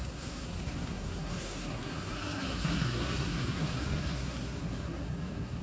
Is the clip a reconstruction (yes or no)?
yes